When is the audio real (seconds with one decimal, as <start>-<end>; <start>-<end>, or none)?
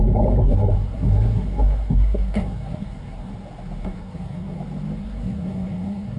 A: 0.0-0.4; 3.3-3.8; 4.6-5.0